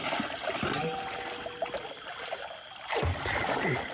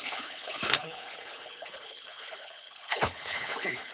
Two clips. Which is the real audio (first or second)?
first